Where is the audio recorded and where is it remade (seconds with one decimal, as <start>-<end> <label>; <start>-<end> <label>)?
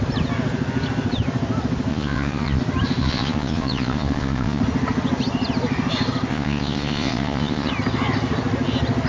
0.0-1.9 recorded; 1.9-2.6 remade; 2.6-3.0 recorded; 3.0-4.6 remade; 4.6-6.3 recorded; 6.3-7.7 remade; 7.7-9.1 recorded